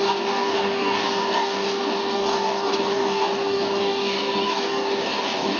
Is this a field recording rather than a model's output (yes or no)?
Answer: no